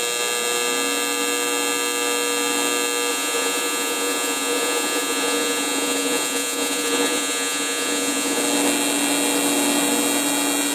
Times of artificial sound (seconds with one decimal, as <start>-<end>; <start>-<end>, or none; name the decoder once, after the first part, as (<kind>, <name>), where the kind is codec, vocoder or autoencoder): 3.1-8.4 (vocoder, Vocos)